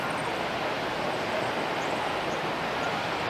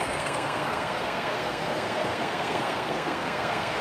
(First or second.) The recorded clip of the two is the first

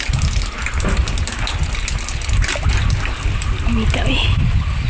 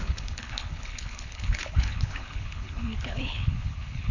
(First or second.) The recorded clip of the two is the first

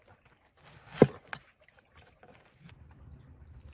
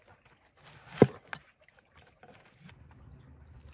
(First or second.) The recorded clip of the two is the second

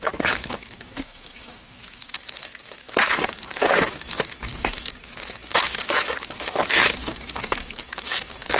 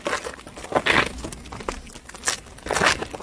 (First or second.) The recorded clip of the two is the second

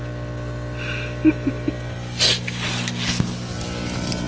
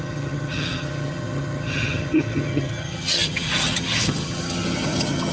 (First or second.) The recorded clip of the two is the first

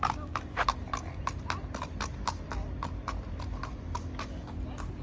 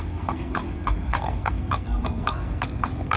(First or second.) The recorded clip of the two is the first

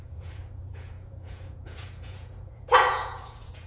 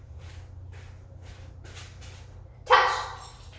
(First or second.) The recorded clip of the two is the second